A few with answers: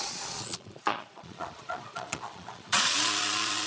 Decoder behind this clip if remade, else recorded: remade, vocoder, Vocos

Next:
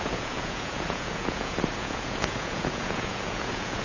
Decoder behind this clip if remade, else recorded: remade, vocoder, Vocos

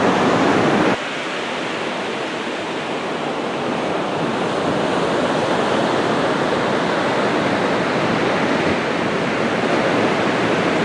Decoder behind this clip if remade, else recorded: recorded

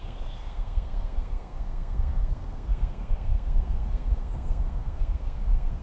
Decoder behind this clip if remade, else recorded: remade, codec, SNAC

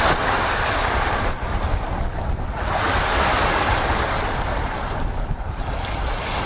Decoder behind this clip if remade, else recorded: recorded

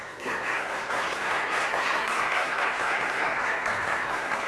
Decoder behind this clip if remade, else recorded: remade, codec, SNAC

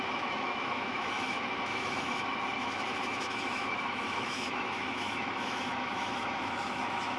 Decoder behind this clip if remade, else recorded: remade, autoencoder, DAC-VAE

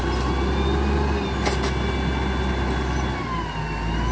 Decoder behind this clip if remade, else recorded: recorded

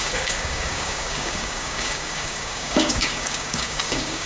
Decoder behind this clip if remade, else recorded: remade, codec, DAC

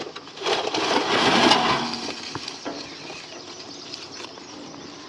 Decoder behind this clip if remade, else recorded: recorded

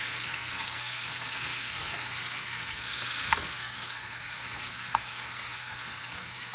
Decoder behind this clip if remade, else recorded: remade, codec, SNAC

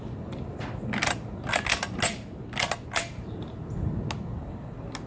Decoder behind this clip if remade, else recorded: recorded